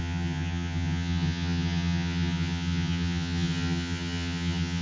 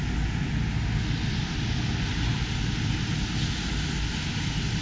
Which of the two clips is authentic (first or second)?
second